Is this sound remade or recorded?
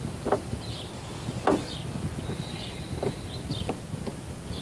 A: recorded